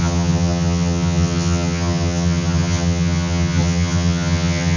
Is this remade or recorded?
remade